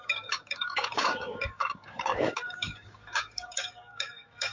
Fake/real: fake